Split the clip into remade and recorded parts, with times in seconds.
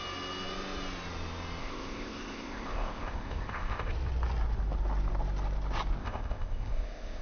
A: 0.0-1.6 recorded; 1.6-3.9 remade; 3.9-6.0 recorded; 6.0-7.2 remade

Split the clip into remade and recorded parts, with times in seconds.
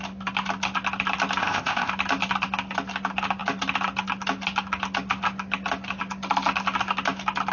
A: 0.0-1.4 recorded; 1.4-1.9 remade; 1.9-7.5 recorded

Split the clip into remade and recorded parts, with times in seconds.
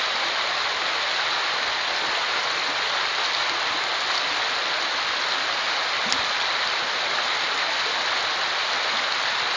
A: 0.0-9.6 recorded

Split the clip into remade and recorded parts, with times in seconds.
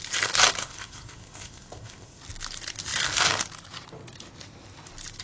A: 0.0-0.6 recorded; 0.6-2.2 remade; 2.2-5.2 recorded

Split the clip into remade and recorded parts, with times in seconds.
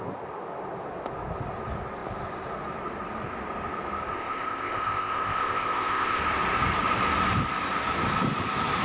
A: 0.0-4.1 recorded; 4.1-6.2 remade; 6.2-8.8 recorded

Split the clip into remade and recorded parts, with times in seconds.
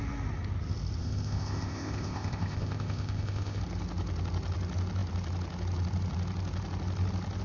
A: 0.0-1.0 recorded; 1.0-3.6 remade; 3.6-7.4 recorded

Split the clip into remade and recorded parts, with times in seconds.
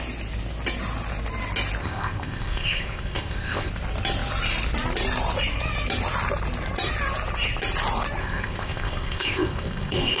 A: 0.0-1.8 recorded; 1.8-3.7 remade; 3.7-8.2 recorded; 8.2-10.2 remade